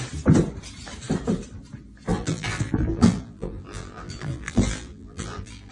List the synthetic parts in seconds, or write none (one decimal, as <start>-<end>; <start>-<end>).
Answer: 2.1-5.7